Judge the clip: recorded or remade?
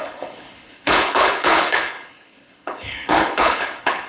remade